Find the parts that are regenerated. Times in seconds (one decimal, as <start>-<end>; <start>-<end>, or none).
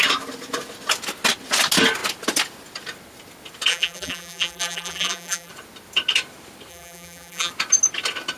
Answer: 3.7-5.5; 6.7-7.5